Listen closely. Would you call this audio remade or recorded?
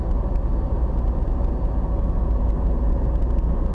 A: recorded